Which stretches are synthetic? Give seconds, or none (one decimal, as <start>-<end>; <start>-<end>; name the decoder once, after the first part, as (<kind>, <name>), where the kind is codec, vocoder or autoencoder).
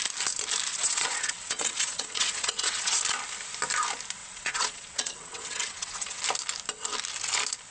0.7-3.0 (vocoder, WaveNeXt); 4.2-6.2